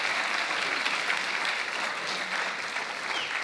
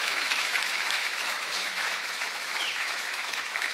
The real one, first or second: first